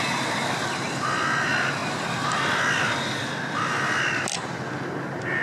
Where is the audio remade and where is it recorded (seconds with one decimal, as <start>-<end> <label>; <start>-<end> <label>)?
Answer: 0.0-5.4 recorded